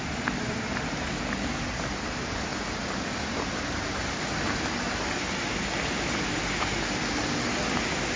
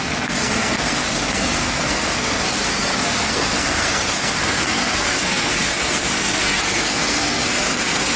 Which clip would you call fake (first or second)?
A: second